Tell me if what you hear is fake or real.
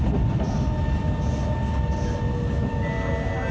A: real